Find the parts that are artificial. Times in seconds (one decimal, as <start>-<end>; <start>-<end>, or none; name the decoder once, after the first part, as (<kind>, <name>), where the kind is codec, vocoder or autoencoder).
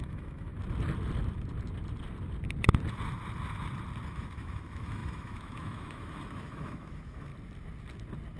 0.0-0.5 (autoencoder, DAC-VAE); 4.1-7.3